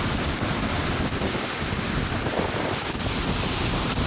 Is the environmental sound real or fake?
real